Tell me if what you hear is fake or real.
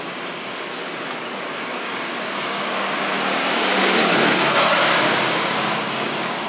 fake